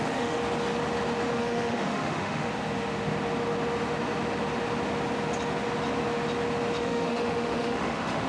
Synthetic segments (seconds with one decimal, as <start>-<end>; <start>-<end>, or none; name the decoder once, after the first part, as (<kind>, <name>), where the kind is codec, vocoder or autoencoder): 0.0-0.4 (autoencoder, DAC-VAE); 1.3-2.5; 6.8-8.3